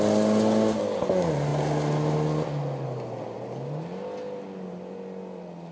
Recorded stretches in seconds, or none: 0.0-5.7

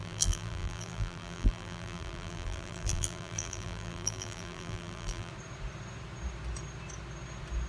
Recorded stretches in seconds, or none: 5.3-7.7

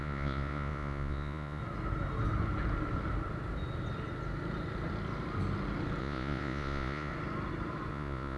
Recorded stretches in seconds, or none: 1.6-6.0; 7.1-7.9

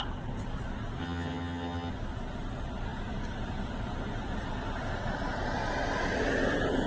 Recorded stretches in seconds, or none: 0.0-1.0; 1.9-6.9

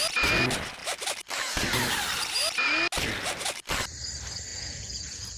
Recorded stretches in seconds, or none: 0.0-4.5

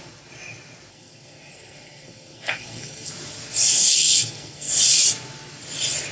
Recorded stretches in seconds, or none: 0.0-0.9; 3.1-3.7; 4.7-6.1